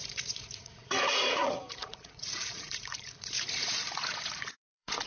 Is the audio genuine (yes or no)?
no